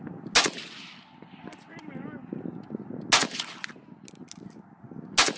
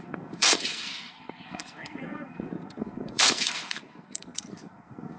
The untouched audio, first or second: first